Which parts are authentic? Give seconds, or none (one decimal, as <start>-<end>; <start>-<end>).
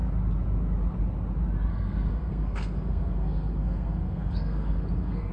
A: 0.0-1.7